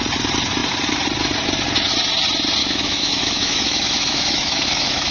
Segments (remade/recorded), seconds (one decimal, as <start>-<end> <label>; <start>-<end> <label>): 0.0-2.6 recorded; 2.6-5.1 remade